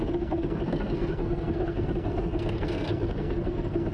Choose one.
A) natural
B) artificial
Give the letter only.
B